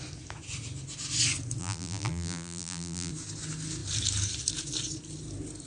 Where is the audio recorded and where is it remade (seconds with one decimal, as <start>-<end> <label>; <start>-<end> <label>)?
0.0-1.6 recorded; 1.6-3.1 remade; 3.1-5.7 recorded